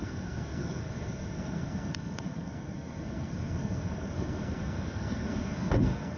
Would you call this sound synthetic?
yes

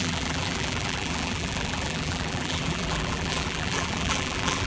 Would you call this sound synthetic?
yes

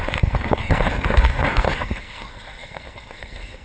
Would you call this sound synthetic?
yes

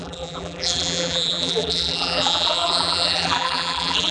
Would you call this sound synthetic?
yes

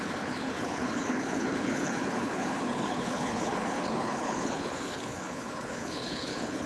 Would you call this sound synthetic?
yes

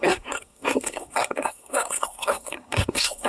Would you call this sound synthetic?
yes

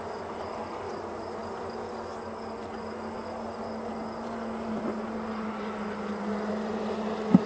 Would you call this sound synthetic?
no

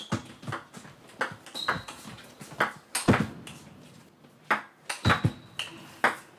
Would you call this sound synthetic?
no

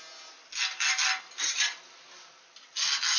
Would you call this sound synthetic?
no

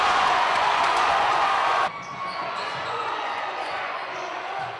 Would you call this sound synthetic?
yes